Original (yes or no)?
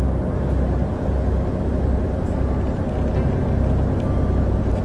yes